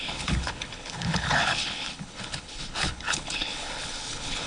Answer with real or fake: fake